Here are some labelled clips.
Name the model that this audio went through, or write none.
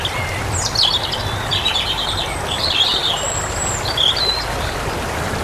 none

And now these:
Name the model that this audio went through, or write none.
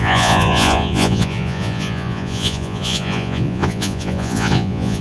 vocoder, Vocos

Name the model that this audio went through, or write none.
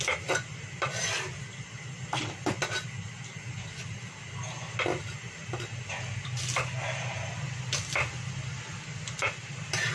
none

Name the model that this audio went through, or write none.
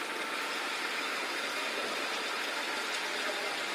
none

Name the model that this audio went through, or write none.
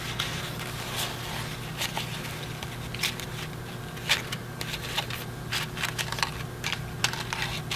none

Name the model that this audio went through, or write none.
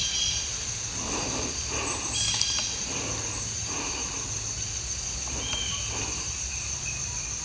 none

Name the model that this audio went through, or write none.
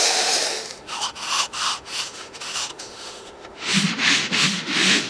autoencoder, DAC-VAE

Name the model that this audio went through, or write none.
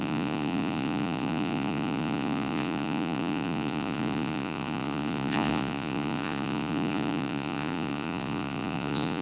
vocoder, Vocos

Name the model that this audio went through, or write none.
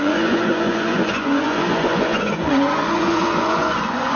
vocoder, Vocos